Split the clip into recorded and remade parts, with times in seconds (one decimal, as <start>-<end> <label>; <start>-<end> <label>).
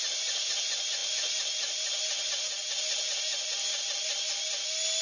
0.0-5.0 recorded